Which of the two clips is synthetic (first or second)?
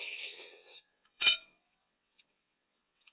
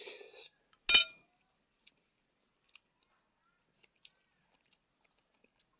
first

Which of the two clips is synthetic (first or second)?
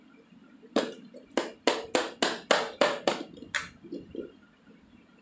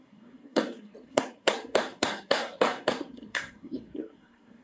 second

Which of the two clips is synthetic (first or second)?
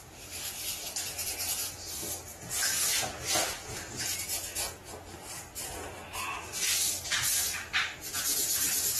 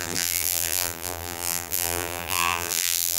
second